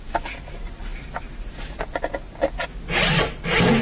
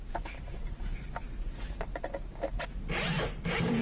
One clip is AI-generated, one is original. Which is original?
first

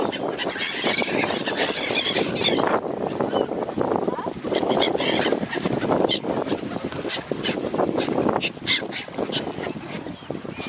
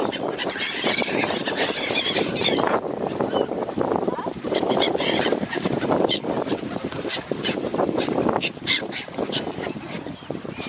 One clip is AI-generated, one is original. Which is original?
first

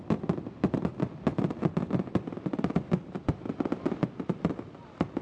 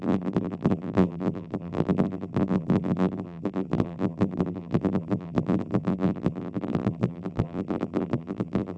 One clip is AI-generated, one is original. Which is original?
first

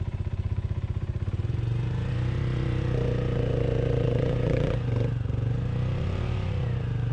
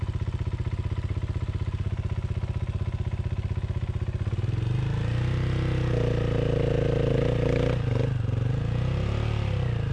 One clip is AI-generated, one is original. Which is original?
second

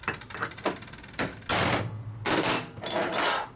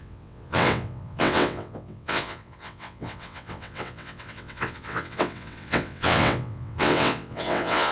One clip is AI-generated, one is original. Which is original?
first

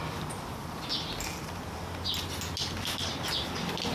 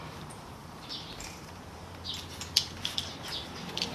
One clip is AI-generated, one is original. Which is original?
first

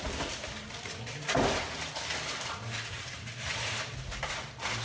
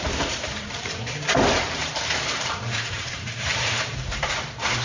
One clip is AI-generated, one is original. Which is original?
first